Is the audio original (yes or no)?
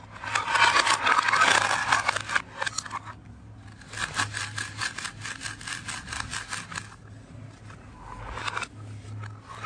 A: yes